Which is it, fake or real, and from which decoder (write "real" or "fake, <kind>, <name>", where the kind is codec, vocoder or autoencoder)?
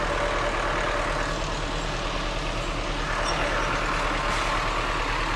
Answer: real